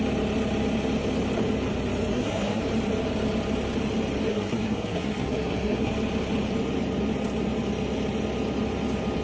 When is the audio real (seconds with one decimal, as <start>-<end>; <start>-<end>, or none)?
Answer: 0.0-2.1; 2.6-4.3; 5.9-9.2